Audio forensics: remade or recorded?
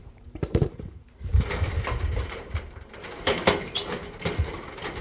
remade